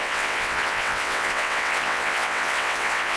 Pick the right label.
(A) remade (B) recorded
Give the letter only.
A